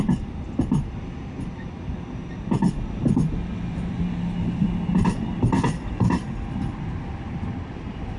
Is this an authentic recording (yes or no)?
yes